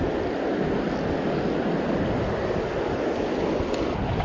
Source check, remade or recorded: recorded